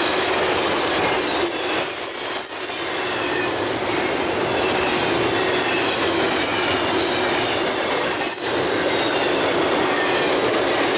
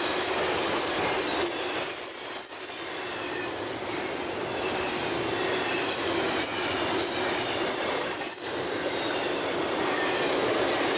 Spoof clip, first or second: second